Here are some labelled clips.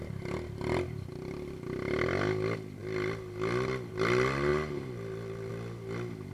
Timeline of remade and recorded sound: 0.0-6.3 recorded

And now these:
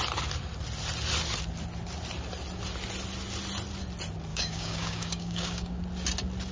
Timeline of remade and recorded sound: 0.0-4.3 recorded; 4.3-5.8 remade; 5.8-6.5 recorded

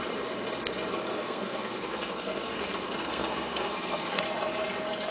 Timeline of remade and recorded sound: 0.0-1.1 recorded; 1.1-4.2 remade; 4.2-5.1 recorded